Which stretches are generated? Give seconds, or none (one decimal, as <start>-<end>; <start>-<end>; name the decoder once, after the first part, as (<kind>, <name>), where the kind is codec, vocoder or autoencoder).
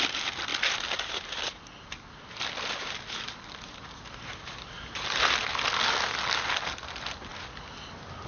none